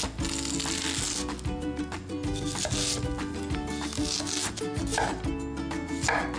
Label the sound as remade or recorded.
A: recorded